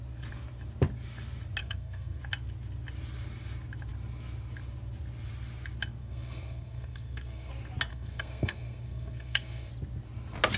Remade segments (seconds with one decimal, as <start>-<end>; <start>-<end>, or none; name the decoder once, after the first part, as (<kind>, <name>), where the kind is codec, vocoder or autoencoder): 1.6-2.2 (codec, SNAC); 6.0-7.5; 7.9-9.7